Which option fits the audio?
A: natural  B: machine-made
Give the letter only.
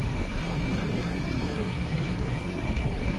B